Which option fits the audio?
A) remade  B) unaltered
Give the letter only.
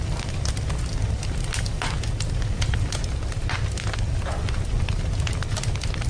B